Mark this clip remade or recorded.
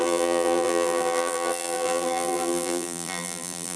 remade